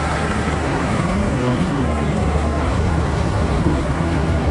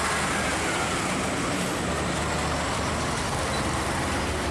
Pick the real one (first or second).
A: second